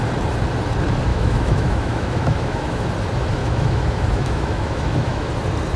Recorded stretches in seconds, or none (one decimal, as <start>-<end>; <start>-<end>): 0.0-1.1; 2.9-3.4; 5.3-5.8